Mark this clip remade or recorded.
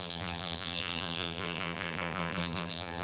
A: remade